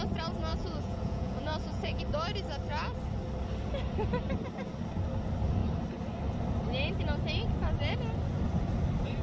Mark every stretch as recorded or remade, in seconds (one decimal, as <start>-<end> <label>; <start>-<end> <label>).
0.0-0.5 recorded; 0.5-2.0 remade; 2.0-9.2 recorded